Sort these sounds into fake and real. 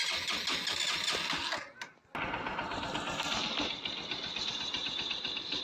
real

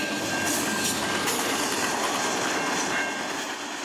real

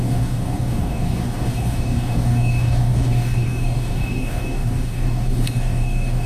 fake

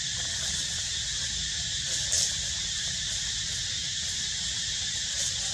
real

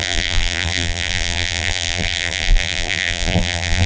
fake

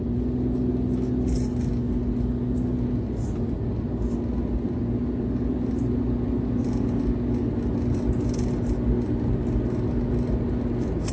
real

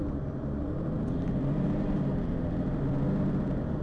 fake